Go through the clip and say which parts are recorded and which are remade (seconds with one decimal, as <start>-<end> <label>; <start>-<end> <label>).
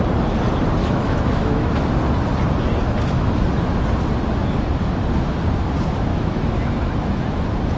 0.0-0.8 recorded; 0.8-1.8 remade; 1.8-6.1 recorded; 6.1-7.2 remade; 7.2-7.8 recorded